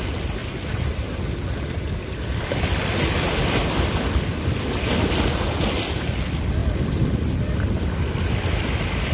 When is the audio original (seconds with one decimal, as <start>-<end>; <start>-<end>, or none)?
0.0-0.4; 5.1-6.6; 7.3-9.1